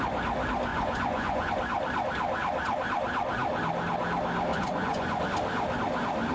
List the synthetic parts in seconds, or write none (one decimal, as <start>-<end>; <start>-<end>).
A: 0.7-1.5; 4.5-5.2